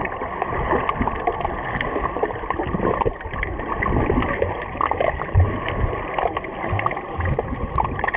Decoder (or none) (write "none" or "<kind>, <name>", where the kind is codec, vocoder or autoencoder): none